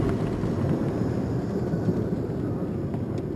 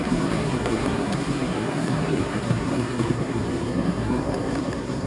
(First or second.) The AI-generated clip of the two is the second